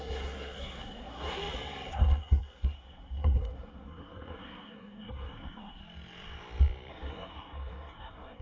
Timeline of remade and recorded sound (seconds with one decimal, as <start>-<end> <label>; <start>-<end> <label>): 0.0-1.4 remade; 1.4-1.9 recorded; 1.9-5.8 remade; 5.8-6.9 recorded; 6.9-8.4 remade